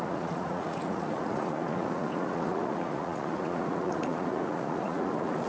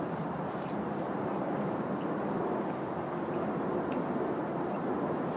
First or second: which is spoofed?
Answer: first